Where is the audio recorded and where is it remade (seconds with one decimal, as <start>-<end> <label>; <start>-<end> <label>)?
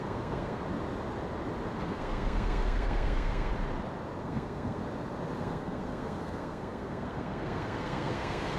0.0-0.6 remade; 0.6-1.8 recorded; 1.8-3.5 remade; 3.5-4.2 recorded; 4.2-4.8 remade; 4.8-5.4 recorded; 5.4-8.6 remade